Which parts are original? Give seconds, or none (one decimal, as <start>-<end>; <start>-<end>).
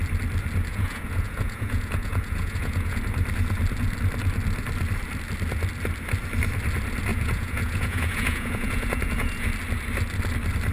0.0-0.7; 3.0-7.1; 9.5-10.7